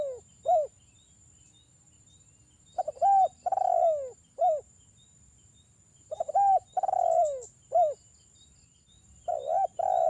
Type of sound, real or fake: real